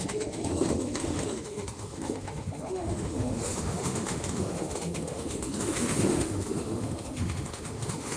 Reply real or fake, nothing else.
fake